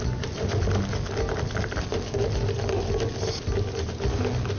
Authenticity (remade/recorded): recorded